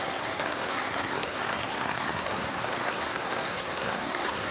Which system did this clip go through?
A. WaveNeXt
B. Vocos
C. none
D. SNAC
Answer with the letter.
D